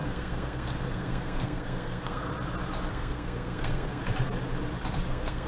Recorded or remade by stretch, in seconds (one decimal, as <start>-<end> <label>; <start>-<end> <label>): 0.0-2.3 remade; 2.3-2.9 recorded; 2.9-4.0 remade; 4.0-5.1 recorded; 5.1-5.5 remade